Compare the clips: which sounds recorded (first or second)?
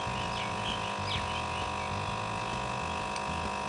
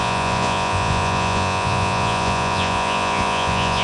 first